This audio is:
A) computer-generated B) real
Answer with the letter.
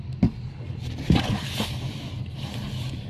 B